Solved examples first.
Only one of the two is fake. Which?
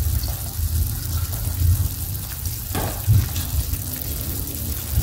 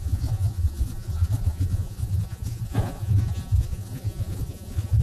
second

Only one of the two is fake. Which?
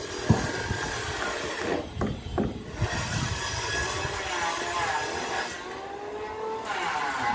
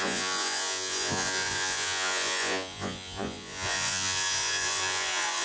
second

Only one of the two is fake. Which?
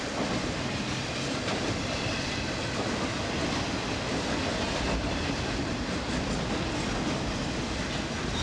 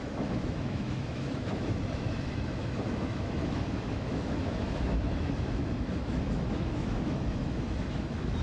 second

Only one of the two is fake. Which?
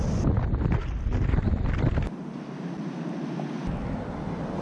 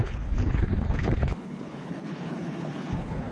second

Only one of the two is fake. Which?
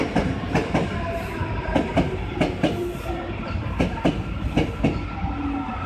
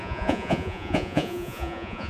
second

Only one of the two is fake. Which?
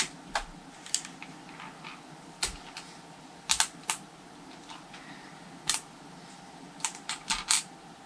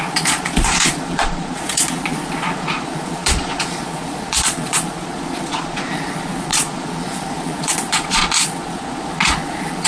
second